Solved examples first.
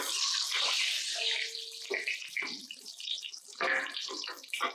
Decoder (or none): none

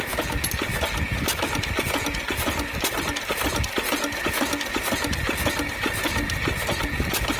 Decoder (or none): none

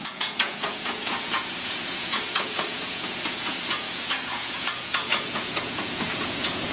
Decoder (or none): vocoder, Vocos